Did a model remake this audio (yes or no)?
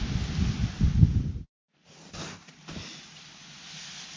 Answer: no